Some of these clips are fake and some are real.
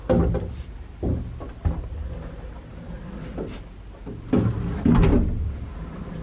real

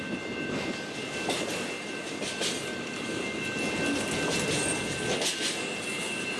real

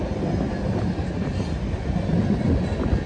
real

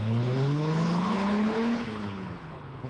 fake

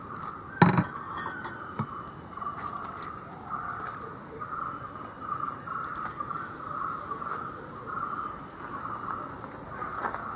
real